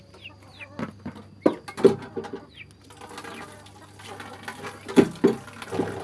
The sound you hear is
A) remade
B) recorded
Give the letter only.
B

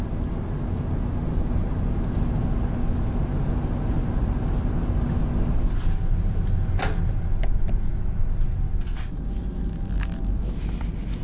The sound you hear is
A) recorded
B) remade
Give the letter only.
A